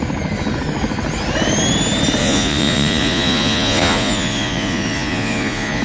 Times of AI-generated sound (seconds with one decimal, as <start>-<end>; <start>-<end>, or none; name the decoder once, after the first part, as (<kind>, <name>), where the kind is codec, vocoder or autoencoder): 2.2-5.8 (vocoder, Vocos)